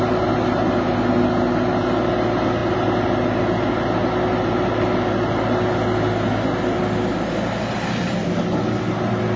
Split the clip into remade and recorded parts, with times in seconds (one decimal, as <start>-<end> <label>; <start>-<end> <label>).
0.0-9.4 recorded